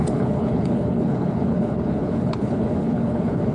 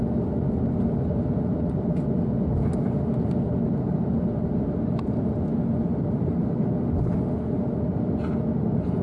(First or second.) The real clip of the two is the second